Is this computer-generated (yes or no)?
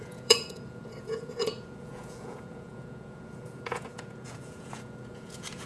yes